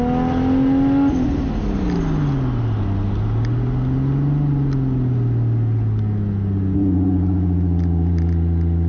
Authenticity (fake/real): real